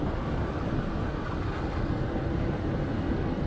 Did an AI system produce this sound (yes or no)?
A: no